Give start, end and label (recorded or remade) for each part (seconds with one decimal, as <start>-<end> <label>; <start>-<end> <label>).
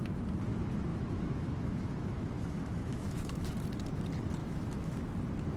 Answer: 0.0-0.9 recorded; 0.9-3.5 remade; 3.5-4.4 recorded; 4.4-5.1 remade; 5.1-5.6 recorded